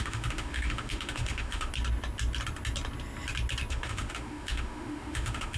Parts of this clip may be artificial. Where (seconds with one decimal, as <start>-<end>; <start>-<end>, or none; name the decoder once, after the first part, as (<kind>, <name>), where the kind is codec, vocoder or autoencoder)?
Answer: 0.0-1.7 (autoencoder, DAC-VAE); 3.7-5.6